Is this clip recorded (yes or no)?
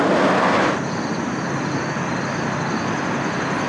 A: yes